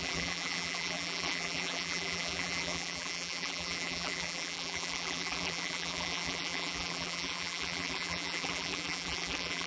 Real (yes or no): no